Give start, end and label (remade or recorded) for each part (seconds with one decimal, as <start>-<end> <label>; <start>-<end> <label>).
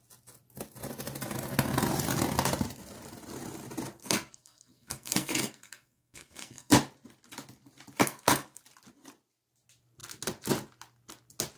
0.0-4.0 recorded; 4.0-6.7 remade; 6.7-8.0 recorded; 8.0-8.6 remade; 8.6-11.6 recorded